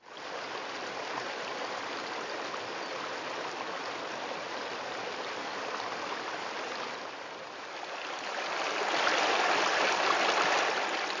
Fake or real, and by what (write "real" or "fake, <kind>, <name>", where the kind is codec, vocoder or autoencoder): real